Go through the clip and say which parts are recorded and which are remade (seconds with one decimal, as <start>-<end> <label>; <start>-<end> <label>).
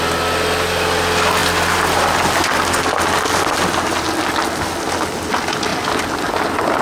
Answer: 0.0-6.8 recorded